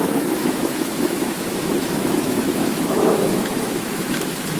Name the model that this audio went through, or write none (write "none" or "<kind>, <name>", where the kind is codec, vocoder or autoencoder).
autoencoder, DAC-VAE